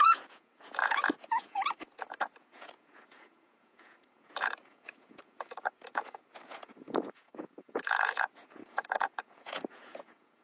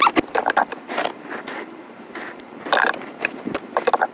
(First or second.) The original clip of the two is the second